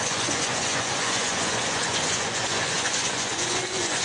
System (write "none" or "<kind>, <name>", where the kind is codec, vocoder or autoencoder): vocoder, Vocos